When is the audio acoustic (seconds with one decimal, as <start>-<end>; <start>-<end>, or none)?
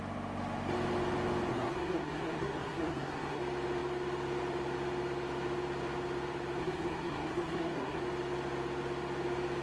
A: 0.0-1.5; 3.4-6.6; 8.0-9.6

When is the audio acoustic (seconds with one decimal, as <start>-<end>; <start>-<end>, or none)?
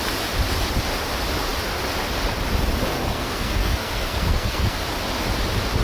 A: 0.0-3.0; 4.8-5.8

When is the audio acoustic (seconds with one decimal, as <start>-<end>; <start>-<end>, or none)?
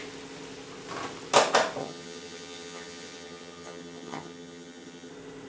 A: 0.0-1.8; 5.1-5.5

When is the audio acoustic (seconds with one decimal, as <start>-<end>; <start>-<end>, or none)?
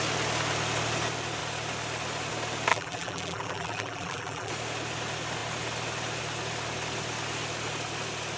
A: 0.0-2.7; 4.5-8.4